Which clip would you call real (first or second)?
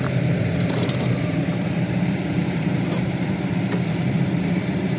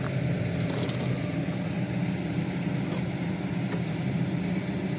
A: second